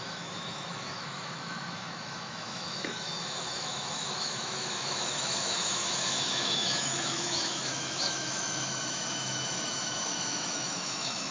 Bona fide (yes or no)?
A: no